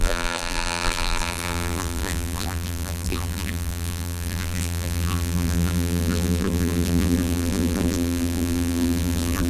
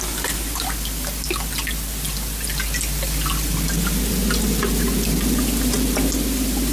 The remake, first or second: first